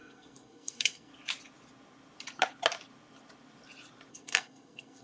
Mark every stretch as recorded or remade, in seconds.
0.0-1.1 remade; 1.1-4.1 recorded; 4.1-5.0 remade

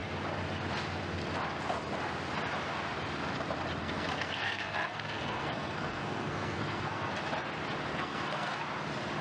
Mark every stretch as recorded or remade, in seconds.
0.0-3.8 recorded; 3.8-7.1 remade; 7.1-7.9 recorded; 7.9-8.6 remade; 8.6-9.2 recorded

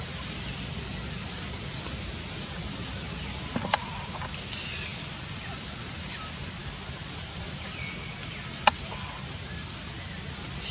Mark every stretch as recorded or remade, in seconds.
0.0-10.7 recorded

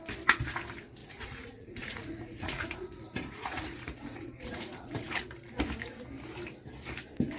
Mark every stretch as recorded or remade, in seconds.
0.0-1.0 recorded; 1.0-5.2 remade; 5.2-7.4 recorded

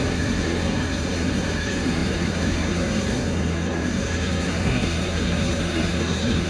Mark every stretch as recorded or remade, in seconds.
0.0-6.5 remade

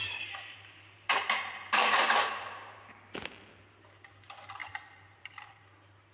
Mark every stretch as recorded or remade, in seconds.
0.0-2.9 remade; 2.9-4.6 recorded; 4.6-5.6 remade; 5.6-6.1 recorded

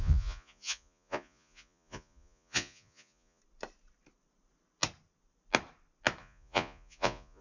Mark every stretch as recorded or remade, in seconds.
0.0-3.4 remade; 3.4-6.2 recorded; 6.2-7.4 remade

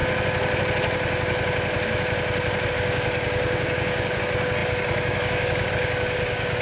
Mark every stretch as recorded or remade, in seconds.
0.0-2.7 recorded; 2.7-6.6 remade